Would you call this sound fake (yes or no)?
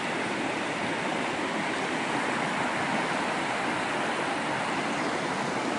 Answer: no